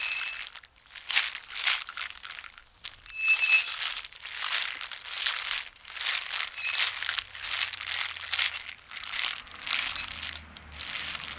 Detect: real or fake real